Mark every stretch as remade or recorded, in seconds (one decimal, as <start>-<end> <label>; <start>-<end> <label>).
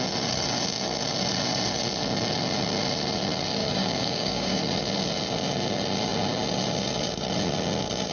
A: 0.0-3.6 recorded; 3.6-4.6 remade; 4.6-8.1 recorded